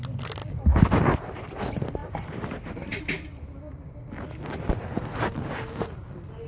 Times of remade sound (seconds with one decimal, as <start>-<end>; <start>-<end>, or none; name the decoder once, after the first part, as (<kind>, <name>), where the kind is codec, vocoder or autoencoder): 2.0-3.0 (vocoder, BigVGAN v2)